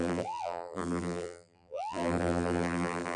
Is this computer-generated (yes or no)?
yes